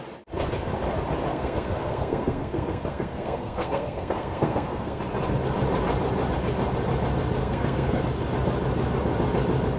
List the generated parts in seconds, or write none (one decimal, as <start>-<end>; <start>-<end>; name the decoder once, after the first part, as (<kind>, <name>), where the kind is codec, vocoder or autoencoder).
1.3-5.0 (codec, SNAC); 7.4-8.0